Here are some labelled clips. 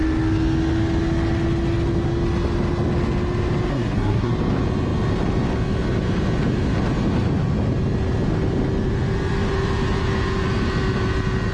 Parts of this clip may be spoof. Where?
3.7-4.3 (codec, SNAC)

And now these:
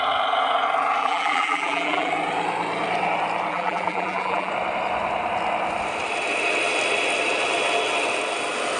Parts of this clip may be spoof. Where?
1.0-2.1 (vocoder, BigVGAN v2); 3.5-4.5